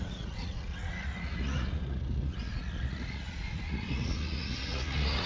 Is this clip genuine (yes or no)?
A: no